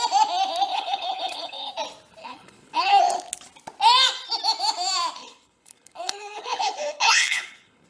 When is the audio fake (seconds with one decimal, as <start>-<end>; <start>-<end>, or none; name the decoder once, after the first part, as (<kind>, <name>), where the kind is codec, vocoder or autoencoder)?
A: 0.7-1.7 (codec, HILCodec); 2.2-3.0; 5.2-7.9